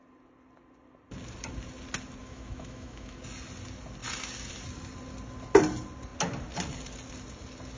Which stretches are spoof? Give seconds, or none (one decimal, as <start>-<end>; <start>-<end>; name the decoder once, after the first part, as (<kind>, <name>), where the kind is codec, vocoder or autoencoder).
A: 2.2-3.2 (autoencoder, DAC-VAE)